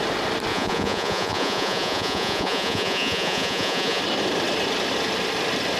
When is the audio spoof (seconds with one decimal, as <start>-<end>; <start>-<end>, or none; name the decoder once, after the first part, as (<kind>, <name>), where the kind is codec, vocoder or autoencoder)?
0.5-4.0 (vocoder, Vocos)